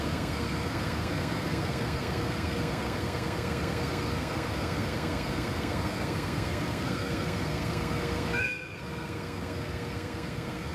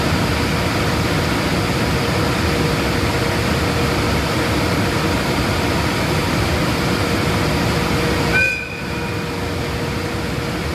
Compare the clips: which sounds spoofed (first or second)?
first